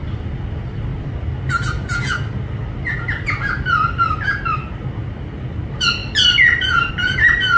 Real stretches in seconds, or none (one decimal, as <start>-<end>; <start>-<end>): 0.0-7.6